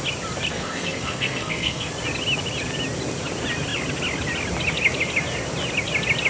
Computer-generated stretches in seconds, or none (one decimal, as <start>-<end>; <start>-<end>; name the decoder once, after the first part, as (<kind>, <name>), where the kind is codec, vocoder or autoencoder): 0.5-1.9 (codec, SNAC)